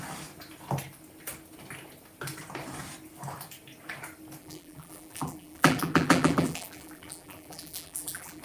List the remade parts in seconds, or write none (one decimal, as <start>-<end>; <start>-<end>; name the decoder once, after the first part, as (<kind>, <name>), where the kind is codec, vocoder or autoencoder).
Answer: 4.4-8.4 (vocoder, BigVGAN v2)